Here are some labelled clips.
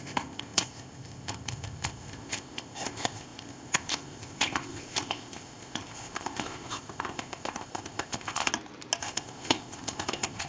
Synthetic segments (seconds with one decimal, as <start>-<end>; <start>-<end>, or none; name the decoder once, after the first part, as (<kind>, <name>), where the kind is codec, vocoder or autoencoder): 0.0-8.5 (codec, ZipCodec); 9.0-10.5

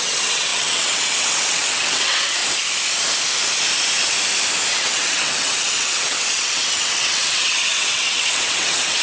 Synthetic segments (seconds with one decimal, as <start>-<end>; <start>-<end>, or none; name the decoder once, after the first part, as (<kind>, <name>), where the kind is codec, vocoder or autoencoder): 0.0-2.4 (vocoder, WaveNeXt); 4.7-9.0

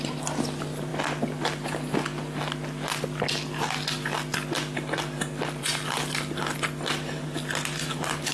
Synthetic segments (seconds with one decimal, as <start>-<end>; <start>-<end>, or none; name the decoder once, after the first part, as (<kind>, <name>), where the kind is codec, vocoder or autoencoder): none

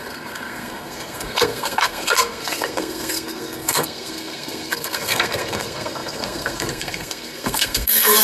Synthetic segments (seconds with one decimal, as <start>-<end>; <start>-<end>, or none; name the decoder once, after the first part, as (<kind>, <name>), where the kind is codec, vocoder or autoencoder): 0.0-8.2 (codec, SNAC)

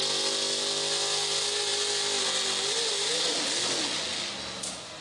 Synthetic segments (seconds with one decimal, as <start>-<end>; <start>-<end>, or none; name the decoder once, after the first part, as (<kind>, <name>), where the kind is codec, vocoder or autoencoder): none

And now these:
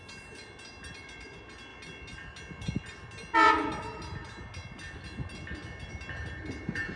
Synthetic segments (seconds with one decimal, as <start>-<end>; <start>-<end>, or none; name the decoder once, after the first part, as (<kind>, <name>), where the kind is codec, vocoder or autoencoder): none